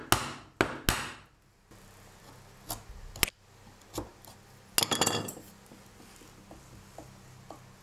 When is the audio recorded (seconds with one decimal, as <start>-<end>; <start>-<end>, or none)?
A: 0.0-7.8